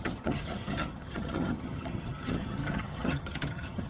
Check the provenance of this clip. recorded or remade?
remade